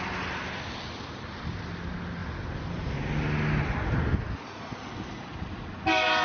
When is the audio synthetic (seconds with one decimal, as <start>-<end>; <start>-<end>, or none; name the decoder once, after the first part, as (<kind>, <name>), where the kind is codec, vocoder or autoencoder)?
none